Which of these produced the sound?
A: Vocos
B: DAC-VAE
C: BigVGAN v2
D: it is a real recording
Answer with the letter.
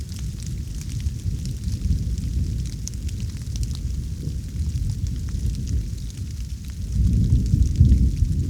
D